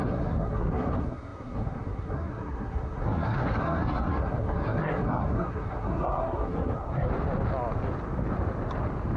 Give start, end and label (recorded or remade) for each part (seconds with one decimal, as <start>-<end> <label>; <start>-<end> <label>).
0.0-7.1 remade; 7.1-9.2 recorded